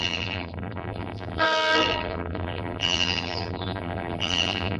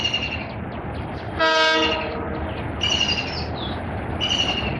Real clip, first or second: second